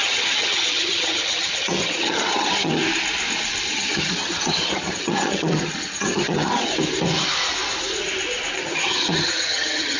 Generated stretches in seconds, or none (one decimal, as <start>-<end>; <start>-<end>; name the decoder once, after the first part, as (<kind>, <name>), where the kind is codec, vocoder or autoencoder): 0.0-2.8 (vocoder, HiFi-GAN); 3.7-6.7; 8.6-10.0